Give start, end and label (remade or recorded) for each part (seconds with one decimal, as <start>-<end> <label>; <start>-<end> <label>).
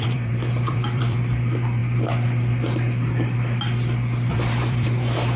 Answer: 0.0-1.8 remade; 1.8-4.3 recorded; 4.3-5.4 remade